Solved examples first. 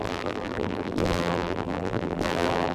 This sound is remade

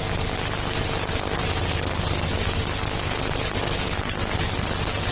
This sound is recorded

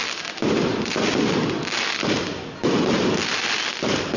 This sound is remade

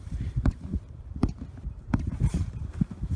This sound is remade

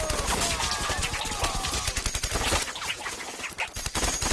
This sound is recorded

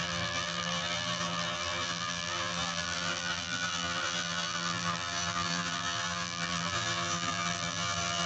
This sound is remade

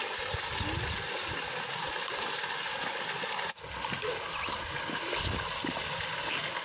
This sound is recorded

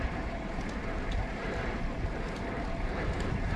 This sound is remade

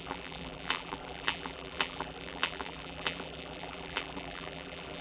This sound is remade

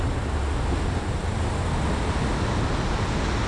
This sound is recorded